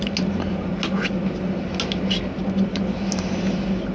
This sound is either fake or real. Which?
real